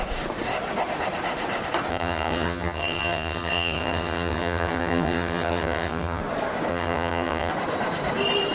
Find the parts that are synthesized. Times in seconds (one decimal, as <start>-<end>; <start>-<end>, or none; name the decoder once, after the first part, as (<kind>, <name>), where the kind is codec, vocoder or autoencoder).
1.9-6.2 (vocoder, HiFi-GAN); 6.7-7.5